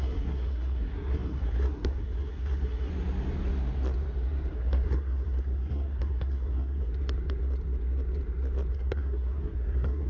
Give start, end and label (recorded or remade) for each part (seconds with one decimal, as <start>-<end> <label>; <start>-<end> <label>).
0.0-2.9 remade; 2.9-4.5 recorded; 4.5-6.9 remade; 6.9-8.7 recorded; 8.7-10.1 remade